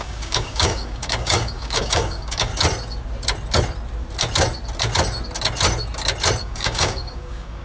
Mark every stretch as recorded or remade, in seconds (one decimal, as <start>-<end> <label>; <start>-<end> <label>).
0.0-2.5 remade; 2.5-6.4 recorded; 6.4-7.6 remade

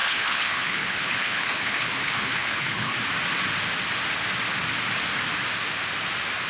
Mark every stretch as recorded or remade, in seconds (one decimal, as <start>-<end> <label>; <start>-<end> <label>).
0.0-2.9 remade; 2.9-6.5 recorded

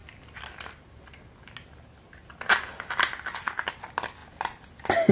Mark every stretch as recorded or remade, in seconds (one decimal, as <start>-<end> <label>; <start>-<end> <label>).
0.0-5.1 recorded

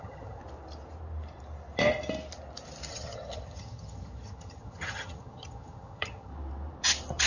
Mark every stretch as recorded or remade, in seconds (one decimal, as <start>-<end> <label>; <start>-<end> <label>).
0.0-0.4 remade; 0.4-2.9 recorded; 2.9-6.3 remade; 6.3-7.3 recorded

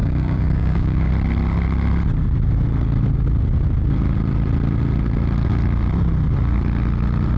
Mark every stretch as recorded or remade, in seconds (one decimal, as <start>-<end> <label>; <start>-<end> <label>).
0.0-1.1 remade; 1.1-7.4 recorded